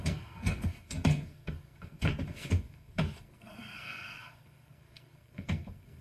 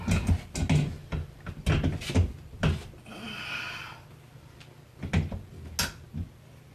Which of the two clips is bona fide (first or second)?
second